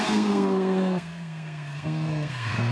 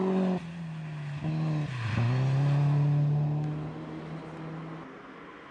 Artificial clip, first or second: first